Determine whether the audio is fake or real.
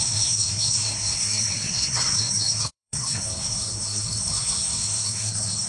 fake